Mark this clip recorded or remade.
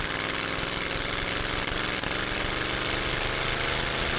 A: recorded